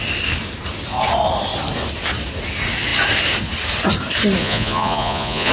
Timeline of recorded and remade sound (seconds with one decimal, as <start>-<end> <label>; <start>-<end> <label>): 0.0-4.4 recorded; 4.4-5.5 remade